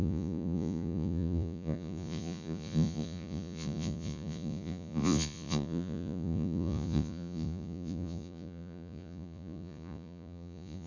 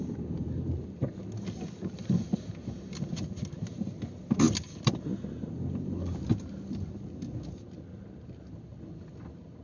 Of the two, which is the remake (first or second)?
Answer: first